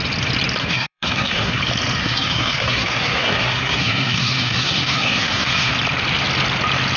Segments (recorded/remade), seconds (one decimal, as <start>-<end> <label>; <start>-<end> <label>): 0.0-0.6 recorded; 0.6-1.6 remade; 1.6-2.0 recorded; 2.0-5.7 remade; 5.7-7.0 recorded